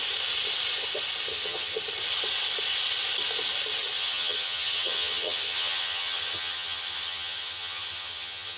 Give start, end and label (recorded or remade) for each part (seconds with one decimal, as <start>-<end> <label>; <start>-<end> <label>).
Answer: 0.0-1.3 recorded; 1.3-1.8 remade; 1.8-4.0 recorded; 4.0-8.6 remade